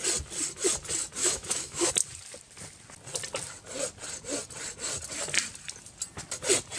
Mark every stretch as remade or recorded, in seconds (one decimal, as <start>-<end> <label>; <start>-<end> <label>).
0.0-1.2 recorded; 1.2-1.9 remade; 1.9-6.8 recorded